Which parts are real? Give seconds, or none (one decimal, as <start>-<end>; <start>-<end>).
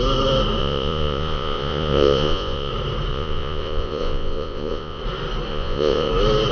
0.0-0.6; 2.7-3.1; 5.0-5.5; 6.1-6.5